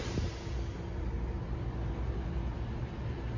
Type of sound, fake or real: real